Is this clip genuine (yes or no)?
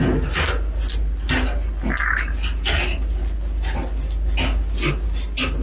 yes